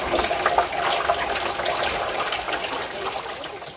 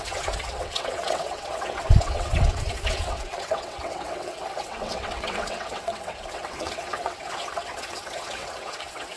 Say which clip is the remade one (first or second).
second